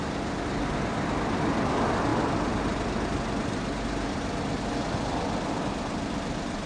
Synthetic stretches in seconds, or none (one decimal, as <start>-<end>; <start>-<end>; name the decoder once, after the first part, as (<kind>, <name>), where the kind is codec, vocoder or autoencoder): none